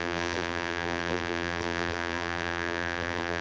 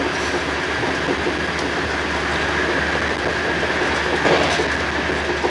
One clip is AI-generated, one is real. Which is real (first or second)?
second